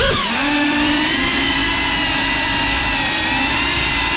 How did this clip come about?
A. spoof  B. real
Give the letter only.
A